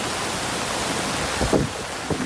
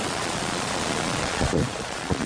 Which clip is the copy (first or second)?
second